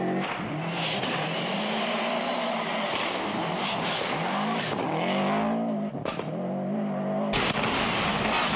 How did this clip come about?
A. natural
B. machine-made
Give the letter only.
A